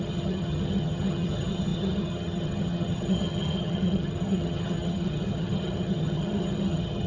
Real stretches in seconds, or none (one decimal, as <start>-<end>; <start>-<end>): none